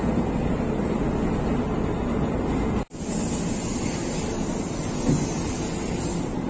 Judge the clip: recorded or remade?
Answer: recorded